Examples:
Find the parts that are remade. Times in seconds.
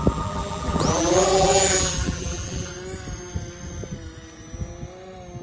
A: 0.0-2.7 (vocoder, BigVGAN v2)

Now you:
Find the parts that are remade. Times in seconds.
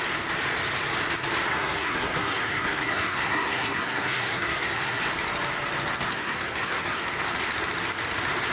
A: 1.5-5.0 (codec, SNAC); 6.1-7.1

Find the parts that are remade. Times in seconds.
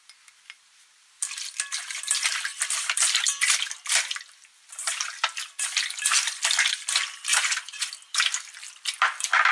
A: 7.3-7.9 (vocoder, Vocos)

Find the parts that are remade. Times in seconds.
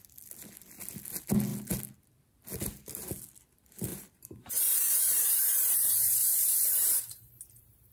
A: 3.9-7.9 (vocoder, BigVGAN v2)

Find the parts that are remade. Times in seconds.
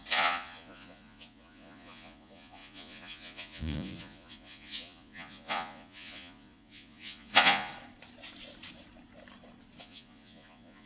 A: 0.0-7.7 (vocoder, Vocos); 9.8-10.9